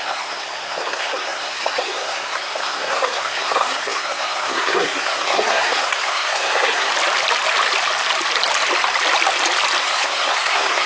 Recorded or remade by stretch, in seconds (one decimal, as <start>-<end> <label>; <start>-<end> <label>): 0.0-6.9 remade; 6.9-9.8 recorded; 9.8-10.9 remade